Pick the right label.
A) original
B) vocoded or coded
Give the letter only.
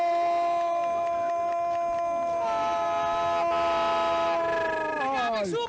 A